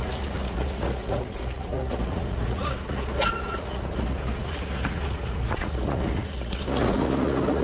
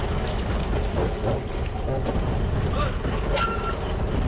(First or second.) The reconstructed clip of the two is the first